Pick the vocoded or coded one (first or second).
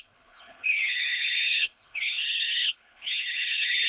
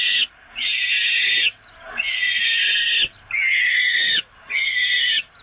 first